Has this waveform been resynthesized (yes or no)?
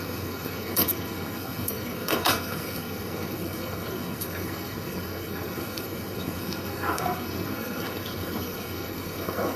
yes